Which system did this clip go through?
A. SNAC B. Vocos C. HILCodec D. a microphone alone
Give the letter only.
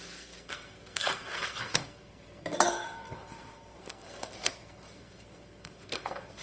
A